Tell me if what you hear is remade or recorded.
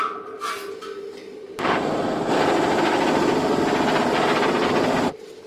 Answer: recorded